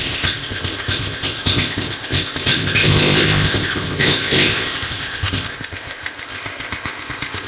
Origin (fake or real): fake